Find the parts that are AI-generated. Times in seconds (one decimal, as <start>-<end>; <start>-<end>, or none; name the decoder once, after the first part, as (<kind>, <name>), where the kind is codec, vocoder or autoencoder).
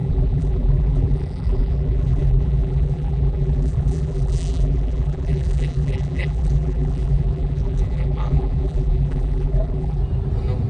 0.0-10.0 (vocoder, BigVGAN v2)